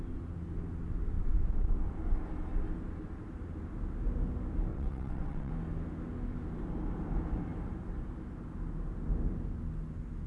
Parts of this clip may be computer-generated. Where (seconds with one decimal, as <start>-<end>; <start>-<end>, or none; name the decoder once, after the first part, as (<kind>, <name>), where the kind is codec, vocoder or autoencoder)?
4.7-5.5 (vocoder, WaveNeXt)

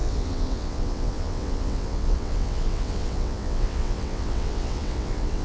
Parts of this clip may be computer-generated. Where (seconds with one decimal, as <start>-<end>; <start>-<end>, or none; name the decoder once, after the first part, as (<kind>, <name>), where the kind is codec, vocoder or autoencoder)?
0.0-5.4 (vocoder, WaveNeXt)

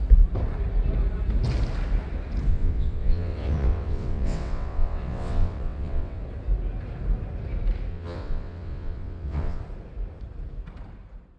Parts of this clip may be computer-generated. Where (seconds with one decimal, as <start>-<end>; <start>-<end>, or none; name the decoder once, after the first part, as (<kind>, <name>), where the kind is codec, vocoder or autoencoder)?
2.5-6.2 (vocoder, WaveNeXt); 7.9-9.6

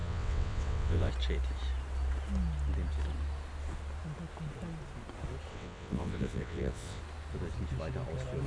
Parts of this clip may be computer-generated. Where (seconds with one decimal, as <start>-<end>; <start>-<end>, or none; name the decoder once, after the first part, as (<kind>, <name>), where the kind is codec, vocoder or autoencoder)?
0.0-1.1 (vocoder, WaveNeXt); 5.5-7.0